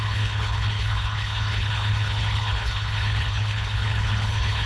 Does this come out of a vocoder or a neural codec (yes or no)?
yes